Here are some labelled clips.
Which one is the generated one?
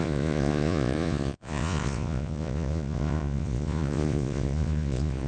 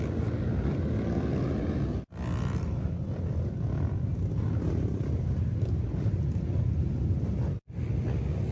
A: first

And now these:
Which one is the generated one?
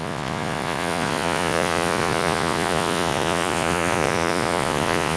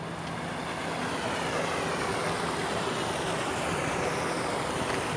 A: first